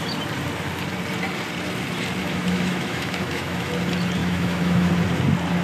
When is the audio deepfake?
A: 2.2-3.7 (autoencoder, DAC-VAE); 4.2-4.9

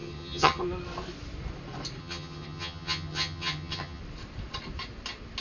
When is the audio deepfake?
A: 0.0-0.6 (vocoder, HiFi-GAN); 2.0-4.0

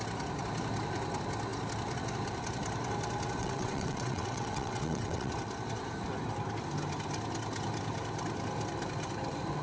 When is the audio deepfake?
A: 3.4-5.3 (vocoder, WaveNeXt)

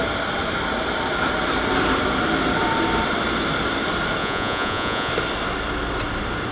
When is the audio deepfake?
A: 4.2-5.1 (vocoder, Vocos)